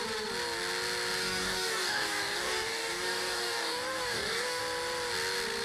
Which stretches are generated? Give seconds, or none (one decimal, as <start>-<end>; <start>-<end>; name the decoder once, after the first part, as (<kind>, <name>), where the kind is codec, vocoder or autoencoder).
1.2-4.6 (codec, DAC)